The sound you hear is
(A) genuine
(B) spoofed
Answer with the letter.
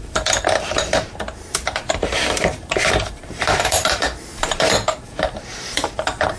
B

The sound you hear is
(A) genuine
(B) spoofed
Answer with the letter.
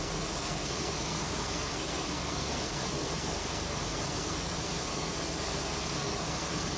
B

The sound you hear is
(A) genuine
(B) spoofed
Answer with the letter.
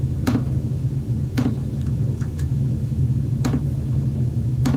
B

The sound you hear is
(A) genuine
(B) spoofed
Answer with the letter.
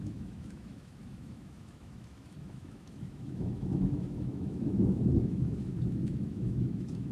B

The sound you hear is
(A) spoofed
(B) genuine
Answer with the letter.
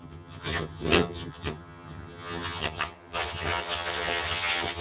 A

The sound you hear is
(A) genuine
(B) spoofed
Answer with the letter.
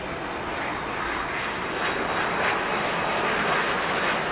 A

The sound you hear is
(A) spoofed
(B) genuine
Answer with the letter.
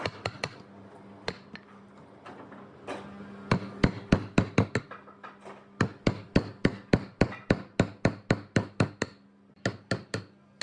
B